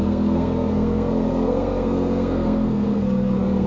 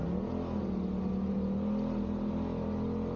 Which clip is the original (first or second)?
second